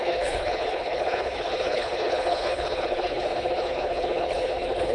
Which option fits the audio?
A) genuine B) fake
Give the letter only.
B